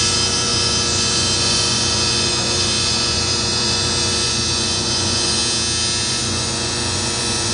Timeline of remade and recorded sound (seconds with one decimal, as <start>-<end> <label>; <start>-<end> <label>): 0.0-5.4 remade; 5.4-6.1 recorded; 6.1-7.5 remade